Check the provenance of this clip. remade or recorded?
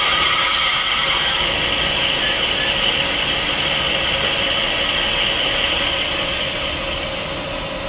recorded